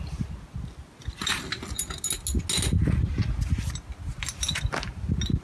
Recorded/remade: recorded